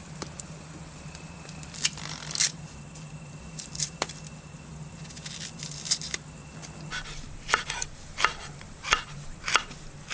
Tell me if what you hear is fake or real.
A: real